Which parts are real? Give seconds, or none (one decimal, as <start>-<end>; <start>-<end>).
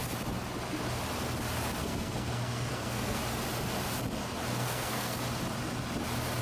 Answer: 0.0-1.8; 3.2-4.5; 5.2-6.4